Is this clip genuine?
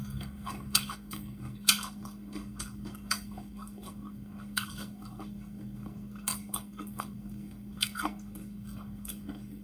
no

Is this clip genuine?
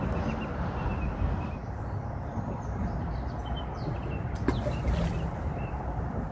yes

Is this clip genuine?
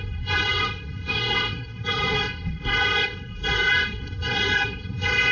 no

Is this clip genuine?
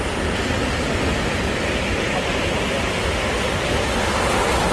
yes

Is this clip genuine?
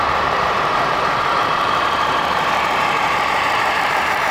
no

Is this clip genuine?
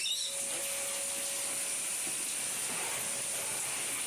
yes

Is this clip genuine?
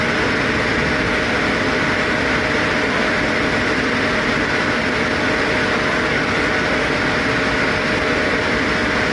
yes